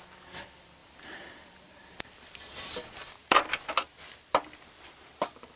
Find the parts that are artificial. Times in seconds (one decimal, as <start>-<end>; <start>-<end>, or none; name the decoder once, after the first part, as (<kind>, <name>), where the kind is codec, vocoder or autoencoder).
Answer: 0.8-3.7 (vocoder, BigVGAN v2)